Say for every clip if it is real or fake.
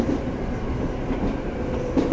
fake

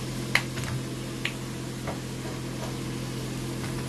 real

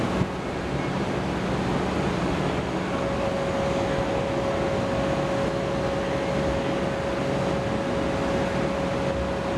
real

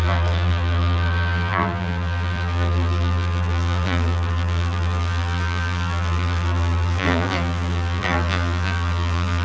fake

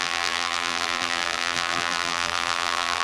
fake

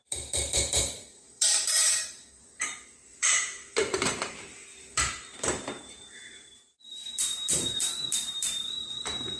fake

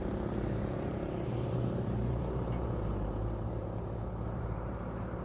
fake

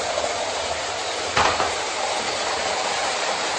fake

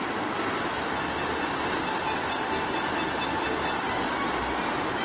real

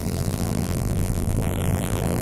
fake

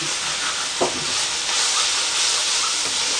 fake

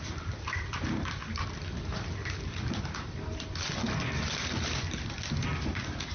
fake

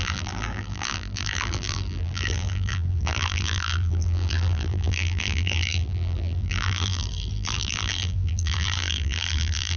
fake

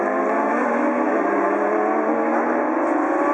real